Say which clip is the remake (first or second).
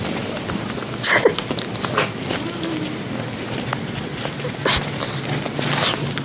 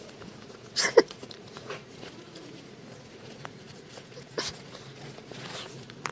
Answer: second